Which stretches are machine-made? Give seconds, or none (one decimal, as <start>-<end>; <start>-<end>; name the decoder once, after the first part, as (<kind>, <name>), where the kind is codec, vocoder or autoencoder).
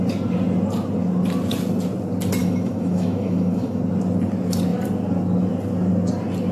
2.4-3.8 (autoencoder, DAC-VAE)